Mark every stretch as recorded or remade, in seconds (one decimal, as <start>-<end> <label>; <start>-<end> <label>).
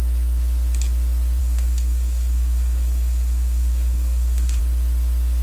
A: 0.0-1.4 recorded; 1.4-4.6 remade; 4.6-5.4 recorded